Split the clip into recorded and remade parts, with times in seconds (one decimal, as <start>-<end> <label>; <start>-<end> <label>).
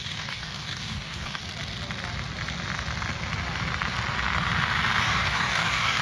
0.0-1.4 remade; 1.4-5.0 recorded; 5.0-6.0 remade